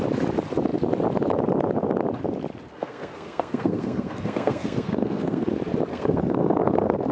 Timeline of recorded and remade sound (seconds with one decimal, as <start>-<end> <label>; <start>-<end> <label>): 0.0-2.7 recorded; 2.7-5.5 remade; 5.5-5.9 recorded; 5.9-7.1 remade